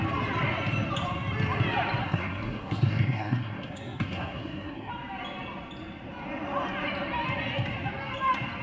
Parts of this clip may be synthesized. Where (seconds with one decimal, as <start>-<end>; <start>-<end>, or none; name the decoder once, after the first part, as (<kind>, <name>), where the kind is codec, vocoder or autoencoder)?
2.0-4.9 (codec, SNAC)